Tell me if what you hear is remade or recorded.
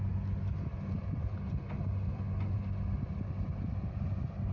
recorded